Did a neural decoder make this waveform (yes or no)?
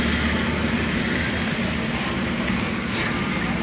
no